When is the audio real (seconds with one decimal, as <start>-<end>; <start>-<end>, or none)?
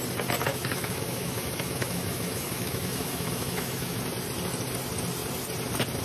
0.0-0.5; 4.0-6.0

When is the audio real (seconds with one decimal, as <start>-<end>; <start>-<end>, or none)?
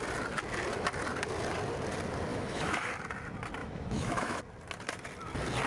0.0-2.3; 2.9-3.6; 4.4-5.7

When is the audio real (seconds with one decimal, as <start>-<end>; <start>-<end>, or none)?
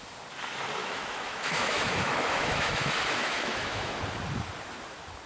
0.0-0.8; 4.0-5.3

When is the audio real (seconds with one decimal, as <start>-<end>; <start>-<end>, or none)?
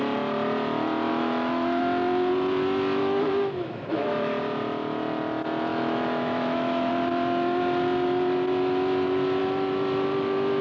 0.0-1.1; 1.8-3.0; 4.4-5.7; 6.9-10.6